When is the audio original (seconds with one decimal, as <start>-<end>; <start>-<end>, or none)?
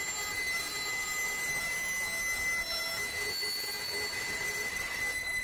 0.0-5.4